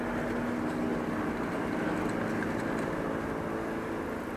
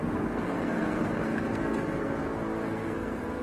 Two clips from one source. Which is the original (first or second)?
first